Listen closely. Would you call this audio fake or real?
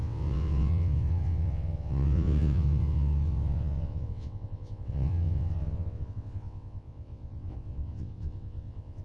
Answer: fake